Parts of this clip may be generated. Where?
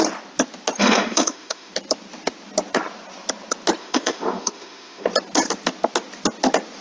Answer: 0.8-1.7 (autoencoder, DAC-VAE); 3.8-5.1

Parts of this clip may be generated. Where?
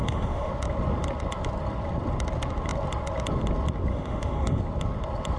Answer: 0.0-0.5 (autoencoder, DAC-VAE); 3.9-4.6